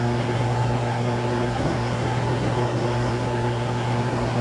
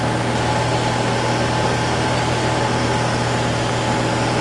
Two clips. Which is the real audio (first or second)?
second